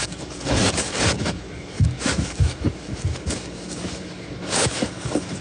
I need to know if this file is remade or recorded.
remade